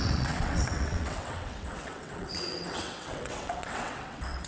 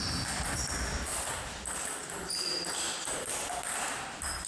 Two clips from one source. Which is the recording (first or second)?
second